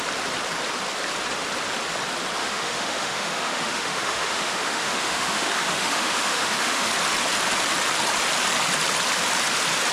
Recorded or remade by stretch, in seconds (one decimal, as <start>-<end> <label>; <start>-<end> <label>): 0.0-2.4 recorded; 2.4-6.9 remade; 6.9-9.9 recorded